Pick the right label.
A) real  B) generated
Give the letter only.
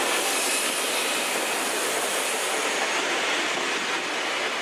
A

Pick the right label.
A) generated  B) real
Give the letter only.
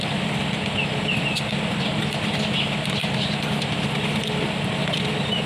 B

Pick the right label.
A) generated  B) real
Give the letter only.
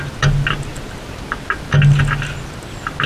B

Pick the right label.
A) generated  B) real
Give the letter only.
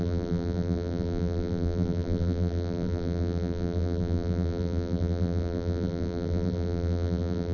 A